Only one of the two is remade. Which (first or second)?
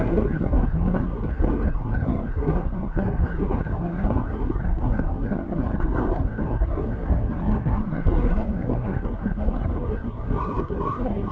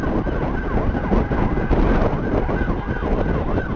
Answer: first